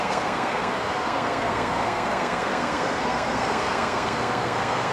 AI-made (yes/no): yes